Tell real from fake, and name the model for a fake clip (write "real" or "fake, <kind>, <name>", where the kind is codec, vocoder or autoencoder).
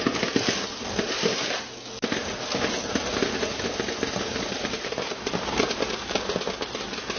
real